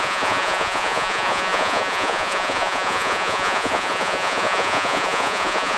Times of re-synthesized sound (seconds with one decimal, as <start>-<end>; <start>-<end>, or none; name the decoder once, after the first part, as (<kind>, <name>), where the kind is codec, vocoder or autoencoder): 0.0-5.8 (vocoder, Vocos)